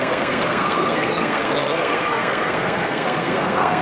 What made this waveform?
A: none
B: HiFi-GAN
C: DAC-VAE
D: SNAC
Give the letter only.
D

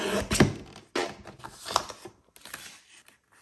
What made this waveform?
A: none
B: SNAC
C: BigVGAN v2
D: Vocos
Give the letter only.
A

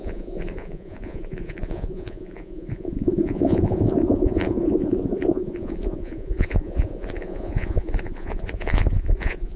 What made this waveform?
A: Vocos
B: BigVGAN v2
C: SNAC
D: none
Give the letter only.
A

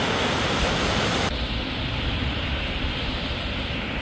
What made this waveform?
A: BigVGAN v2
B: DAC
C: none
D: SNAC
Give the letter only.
A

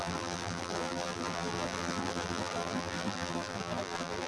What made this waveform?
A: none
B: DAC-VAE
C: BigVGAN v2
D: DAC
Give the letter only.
C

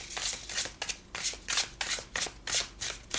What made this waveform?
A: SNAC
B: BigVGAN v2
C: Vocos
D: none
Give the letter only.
D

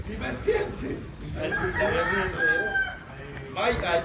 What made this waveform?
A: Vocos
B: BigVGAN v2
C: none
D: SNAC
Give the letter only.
C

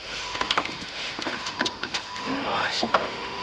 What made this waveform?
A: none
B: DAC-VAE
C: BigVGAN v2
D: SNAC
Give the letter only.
B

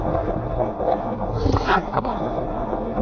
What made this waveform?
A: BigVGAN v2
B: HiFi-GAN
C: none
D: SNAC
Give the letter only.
D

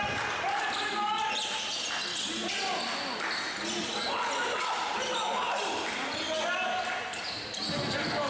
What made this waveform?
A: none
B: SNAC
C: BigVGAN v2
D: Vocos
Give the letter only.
A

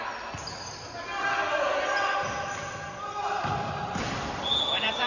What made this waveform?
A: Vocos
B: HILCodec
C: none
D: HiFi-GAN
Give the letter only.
C